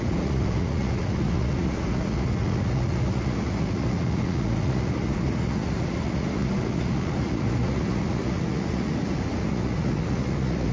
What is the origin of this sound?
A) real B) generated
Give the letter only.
B